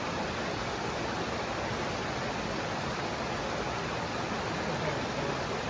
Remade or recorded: recorded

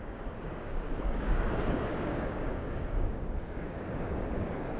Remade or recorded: remade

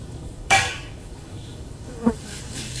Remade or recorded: remade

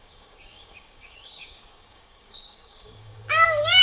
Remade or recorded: remade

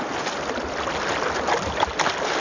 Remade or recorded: recorded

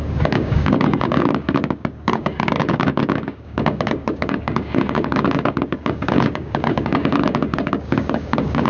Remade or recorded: remade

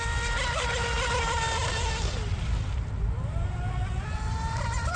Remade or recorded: recorded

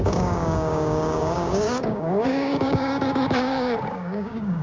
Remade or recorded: remade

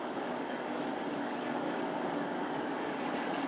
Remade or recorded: remade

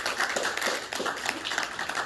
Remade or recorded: recorded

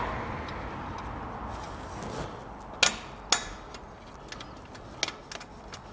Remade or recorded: recorded